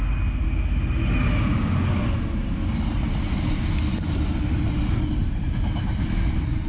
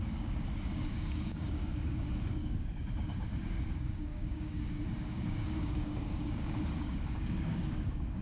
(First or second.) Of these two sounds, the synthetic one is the second